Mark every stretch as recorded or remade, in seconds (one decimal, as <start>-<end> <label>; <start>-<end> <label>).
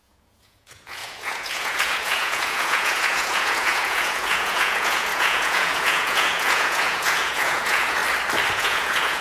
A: 0.0-8.0 remade; 8.0-8.5 recorded; 8.5-9.2 remade